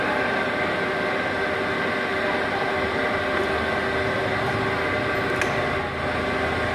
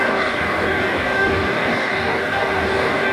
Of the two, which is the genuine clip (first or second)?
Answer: first